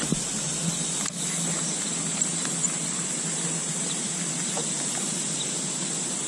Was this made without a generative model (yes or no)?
yes